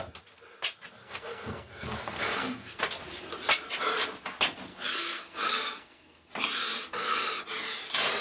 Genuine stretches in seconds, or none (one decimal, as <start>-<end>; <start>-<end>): 0.0-1.0; 2.8-4.7; 6.3-6.9; 7.4-8.2